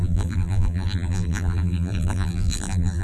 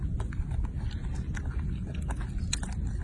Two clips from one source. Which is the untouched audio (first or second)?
second